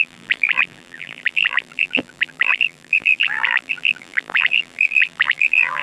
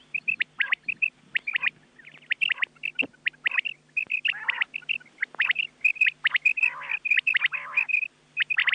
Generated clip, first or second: first